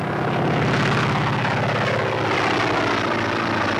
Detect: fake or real real